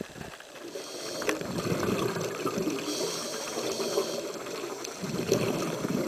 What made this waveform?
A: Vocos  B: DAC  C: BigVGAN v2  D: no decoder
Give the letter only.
D